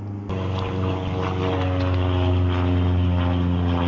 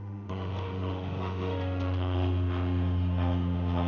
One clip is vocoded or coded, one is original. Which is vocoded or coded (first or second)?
second